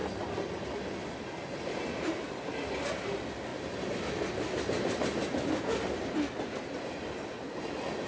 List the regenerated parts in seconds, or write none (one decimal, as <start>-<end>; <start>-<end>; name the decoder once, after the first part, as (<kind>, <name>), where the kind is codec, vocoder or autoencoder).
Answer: none